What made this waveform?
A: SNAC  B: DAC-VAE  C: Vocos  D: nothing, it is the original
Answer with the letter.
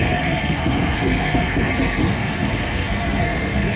A